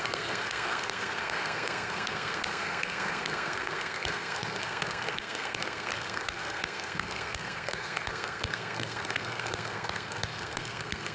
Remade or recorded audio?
remade